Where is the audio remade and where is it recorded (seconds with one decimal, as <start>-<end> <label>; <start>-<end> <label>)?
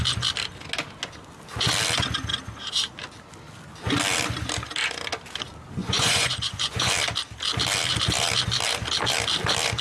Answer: 0.0-5.8 recorded; 5.8-6.9 remade; 6.9-9.8 recorded